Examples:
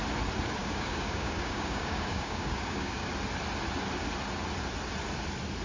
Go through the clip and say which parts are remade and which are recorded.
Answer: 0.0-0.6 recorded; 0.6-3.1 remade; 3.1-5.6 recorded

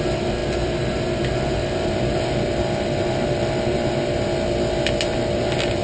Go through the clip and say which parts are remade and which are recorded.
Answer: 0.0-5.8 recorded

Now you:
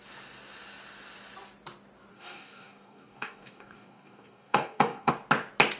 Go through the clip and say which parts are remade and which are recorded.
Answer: 0.0-2.1 recorded; 2.1-5.1 remade; 5.1-5.8 recorded

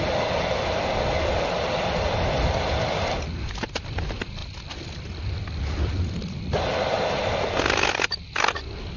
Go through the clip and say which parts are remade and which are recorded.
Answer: 0.0-9.0 recorded

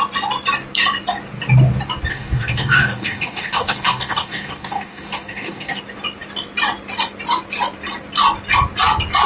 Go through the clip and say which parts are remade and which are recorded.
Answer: 0.0-2.1 recorded; 2.1-5.8 remade; 5.8-9.3 recorded

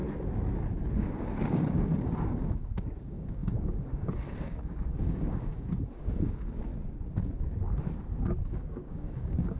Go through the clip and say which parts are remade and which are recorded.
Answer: 0.0-1.0 recorded; 1.0-6.7 remade; 6.7-8.5 recorded; 8.5-9.6 remade

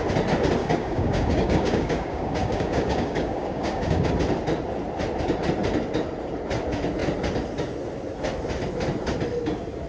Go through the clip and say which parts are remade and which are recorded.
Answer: 0.0-0.6 recorded; 0.6-4.1 remade; 4.1-9.9 recorded